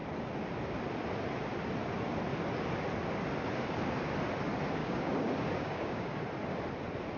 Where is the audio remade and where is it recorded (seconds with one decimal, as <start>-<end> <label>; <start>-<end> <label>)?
0.0-4.8 recorded; 4.8-6.3 remade; 6.3-7.2 recorded